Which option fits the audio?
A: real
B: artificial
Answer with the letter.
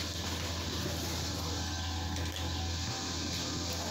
A